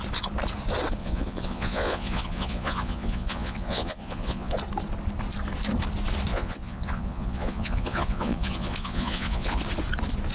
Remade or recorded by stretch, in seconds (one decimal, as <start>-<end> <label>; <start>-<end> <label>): 0.0-1.0 recorded; 1.0-4.5 remade; 4.5-6.3 recorded; 6.3-9.6 remade; 9.6-10.3 recorded